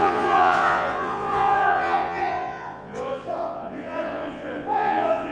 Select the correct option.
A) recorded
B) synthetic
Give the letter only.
B